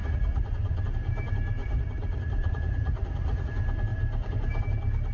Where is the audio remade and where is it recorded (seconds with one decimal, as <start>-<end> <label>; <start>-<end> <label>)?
0.0-0.8 remade; 0.8-1.6 recorded; 1.6-3.5 remade; 3.5-5.1 recorded